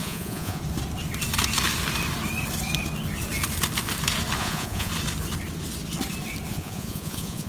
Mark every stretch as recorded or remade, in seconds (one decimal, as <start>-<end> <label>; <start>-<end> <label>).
0.0-0.6 remade; 0.6-4.4 recorded; 4.4-4.9 remade; 4.9-6.5 recorded; 6.5-7.5 remade